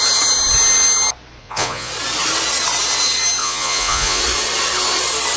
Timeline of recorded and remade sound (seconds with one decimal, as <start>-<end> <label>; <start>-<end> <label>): 0.0-1.4 recorded; 1.4-1.9 remade; 1.9-3.4 recorded; 3.4-4.2 remade; 4.2-5.4 recorded